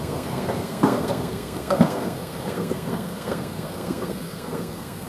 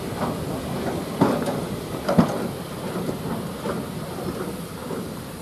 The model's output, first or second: first